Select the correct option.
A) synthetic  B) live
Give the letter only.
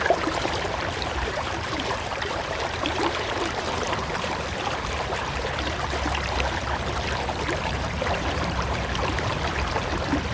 A